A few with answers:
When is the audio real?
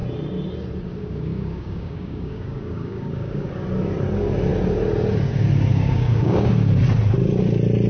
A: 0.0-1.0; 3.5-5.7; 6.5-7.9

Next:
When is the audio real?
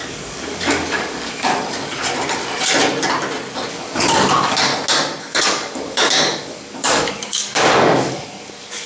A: 1.5-3.7; 4.7-5.2